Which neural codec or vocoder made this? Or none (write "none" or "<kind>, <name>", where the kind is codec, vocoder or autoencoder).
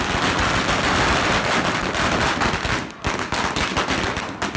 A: none